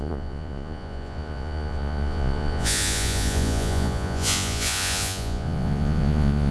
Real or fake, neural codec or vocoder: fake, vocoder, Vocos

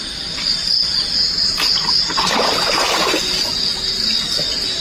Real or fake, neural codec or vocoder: real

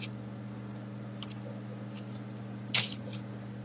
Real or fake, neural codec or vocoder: real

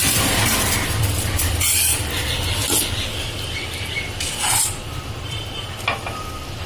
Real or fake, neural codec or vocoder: fake, vocoder, BigVGAN v2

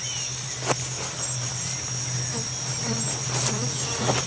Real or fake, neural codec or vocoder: real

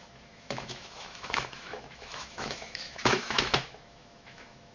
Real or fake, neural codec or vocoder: fake, autoencoder, DAC-VAE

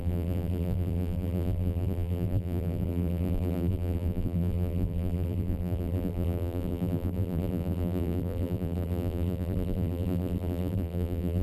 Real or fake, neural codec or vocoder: fake, vocoder, BigVGAN v2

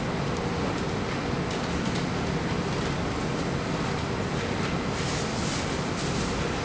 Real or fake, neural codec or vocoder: real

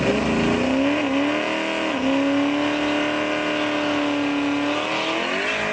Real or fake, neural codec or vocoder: real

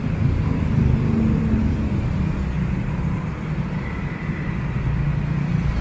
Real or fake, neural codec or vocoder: real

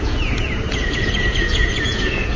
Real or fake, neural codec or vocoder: fake, vocoder, Vocos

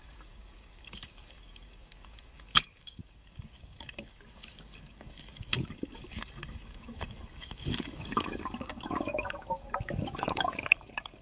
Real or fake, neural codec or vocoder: fake, codec, DAC